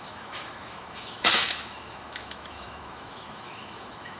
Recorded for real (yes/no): no